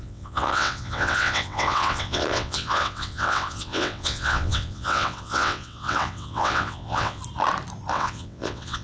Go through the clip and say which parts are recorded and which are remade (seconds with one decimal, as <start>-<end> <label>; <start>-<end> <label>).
0.0-7.2 remade; 7.2-7.9 recorded; 7.9-8.8 remade